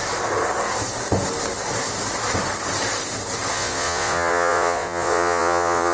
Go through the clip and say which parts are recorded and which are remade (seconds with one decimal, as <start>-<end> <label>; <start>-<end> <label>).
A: 0.0-3.5 recorded; 3.5-5.9 remade